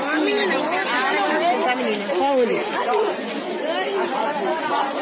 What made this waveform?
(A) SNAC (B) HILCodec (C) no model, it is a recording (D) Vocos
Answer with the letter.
C